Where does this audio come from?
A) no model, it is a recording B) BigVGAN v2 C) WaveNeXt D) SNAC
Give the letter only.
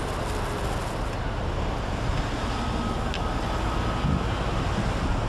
A